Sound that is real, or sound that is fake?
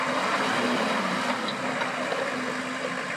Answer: real